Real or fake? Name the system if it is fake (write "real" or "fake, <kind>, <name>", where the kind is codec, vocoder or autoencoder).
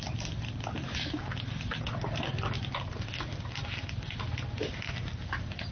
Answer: real